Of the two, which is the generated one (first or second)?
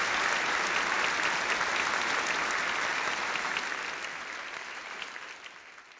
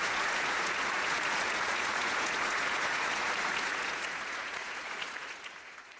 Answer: second